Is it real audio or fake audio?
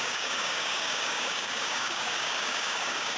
fake